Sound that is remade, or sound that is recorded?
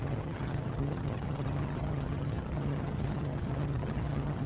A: remade